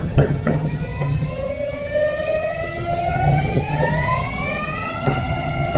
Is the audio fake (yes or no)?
yes